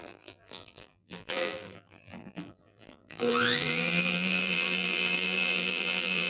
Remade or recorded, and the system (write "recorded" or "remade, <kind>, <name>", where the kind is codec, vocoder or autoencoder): remade, vocoder, BigVGAN v2